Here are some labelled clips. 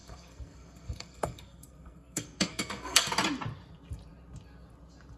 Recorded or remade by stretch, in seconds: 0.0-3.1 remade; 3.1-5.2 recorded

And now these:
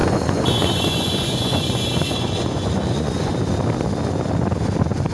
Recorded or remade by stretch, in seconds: 0.0-3.3 remade; 3.3-5.1 recorded